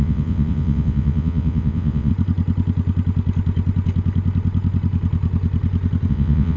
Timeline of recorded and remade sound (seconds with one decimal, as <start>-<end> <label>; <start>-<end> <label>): 0.0-2.1 remade; 2.1-6.1 recorded; 6.1-6.6 remade